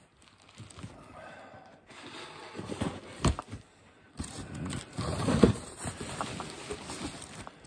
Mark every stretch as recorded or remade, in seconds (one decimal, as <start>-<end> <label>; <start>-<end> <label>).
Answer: 0.0-7.7 recorded